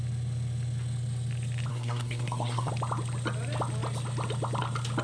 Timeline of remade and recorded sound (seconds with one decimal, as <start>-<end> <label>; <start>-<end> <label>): 0.0-1.7 recorded; 1.7-2.7 remade; 2.7-5.0 recorded